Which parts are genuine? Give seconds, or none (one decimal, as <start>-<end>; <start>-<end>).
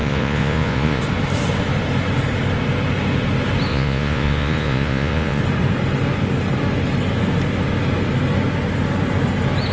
1.0-3.7; 5.4-9.7